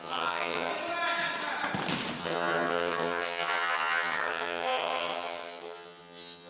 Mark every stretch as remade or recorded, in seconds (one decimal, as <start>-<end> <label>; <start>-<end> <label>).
0.0-0.7 remade; 0.7-2.2 recorded; 2.2-6.5 remade